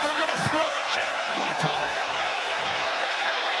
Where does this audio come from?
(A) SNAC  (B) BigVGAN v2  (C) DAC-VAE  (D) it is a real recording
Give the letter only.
A